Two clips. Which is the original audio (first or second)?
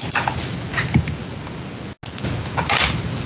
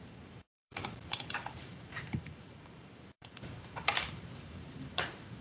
first